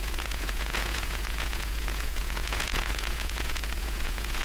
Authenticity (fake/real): fake